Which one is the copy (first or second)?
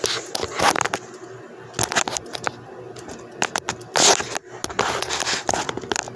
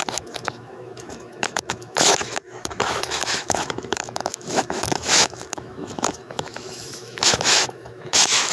second